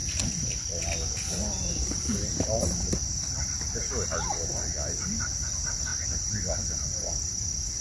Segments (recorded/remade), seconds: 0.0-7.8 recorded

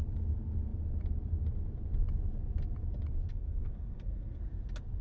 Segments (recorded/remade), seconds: 0.0-3.3 recorded; 3.3-4.4 remade; 4.4-5.0 recorded

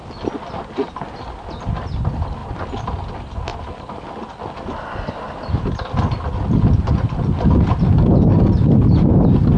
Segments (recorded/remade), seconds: 0.0-9.6 recorded

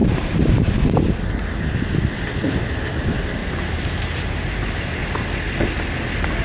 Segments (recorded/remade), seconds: 0.0-1.0 remade; 1.0-3.4 recorded; 3.4-5.0 remade; 5.0-6.4 recorded